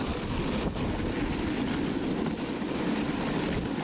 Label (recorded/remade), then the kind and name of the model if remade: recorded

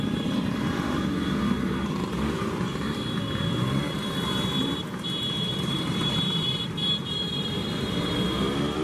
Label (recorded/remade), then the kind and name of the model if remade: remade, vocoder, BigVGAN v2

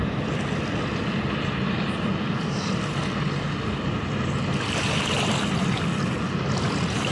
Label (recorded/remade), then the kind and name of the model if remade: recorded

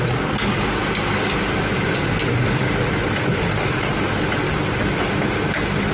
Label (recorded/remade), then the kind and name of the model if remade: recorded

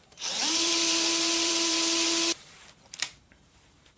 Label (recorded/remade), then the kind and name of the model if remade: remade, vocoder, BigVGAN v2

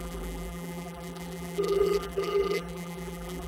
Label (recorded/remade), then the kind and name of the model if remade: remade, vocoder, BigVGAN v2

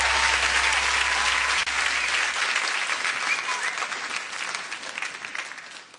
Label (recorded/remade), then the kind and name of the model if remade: recorded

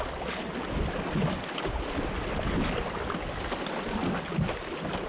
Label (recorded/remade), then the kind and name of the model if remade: remade, vocoder, BigVGAN v2